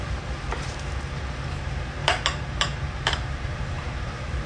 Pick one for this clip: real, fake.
fake